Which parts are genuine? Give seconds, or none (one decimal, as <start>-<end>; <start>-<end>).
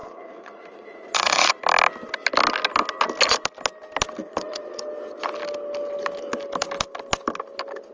1.5-4.2; 4.8-7.9